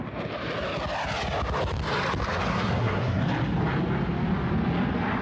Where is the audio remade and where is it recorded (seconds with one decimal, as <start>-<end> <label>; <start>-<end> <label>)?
0.0-2.5 recorded; 2.5-3.2 remade; 3.2-5.2 recorded

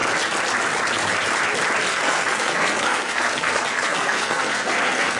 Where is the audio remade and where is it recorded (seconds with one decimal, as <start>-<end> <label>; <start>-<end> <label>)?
0.0-1.9 recorded; 1.9-5.2 remade

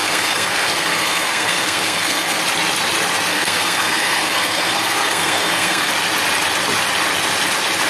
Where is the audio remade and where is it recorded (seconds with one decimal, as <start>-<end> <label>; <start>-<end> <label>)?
0.0-2.4 remade; 2.4-3.3 recorded; 3.3-5.9 remade; 5.9-7.9 recorded

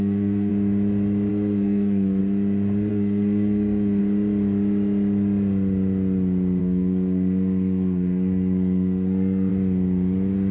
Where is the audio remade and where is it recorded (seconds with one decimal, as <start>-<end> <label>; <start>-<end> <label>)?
0.0-0.5 remade; 0.5-1.3 recorded; 1.3-2.2 remade; 2.2-2.9 recorded; 2.9-4.0 remade; 4.0-6.6 recorded; 6.6-9.5 remade; 9.5-10.5 recorded

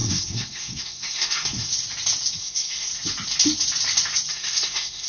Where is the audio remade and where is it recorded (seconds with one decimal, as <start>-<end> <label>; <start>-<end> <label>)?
0.0-1.7 remade; 1.7-2.4 recorded; 2.4-2.9 remade; 2.9-4.3 recorded; 4.3-5.1 remade

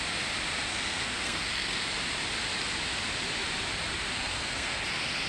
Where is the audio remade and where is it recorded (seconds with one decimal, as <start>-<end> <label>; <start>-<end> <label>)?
0.0-0.7 recorded; 0.7-1.9 remade; 1.9-4.1 recorded; 4.1-4.8 remade; 4.8-5.3 recorded

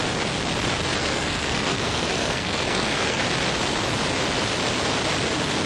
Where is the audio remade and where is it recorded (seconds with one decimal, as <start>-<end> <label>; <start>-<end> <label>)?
0.0-1.0 recorded; 1.0-3.2 remade; 3.2-5.7 recorded